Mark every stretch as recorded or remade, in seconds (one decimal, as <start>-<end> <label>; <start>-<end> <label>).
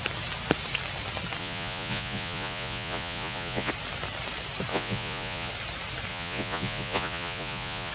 0.0-1.4 recorded; 1.4-3.7 remade; 3.7-4.7 recorded; 4.7-5.5 remade; 5.5-6.1 recorded; 6.1-7.9 remade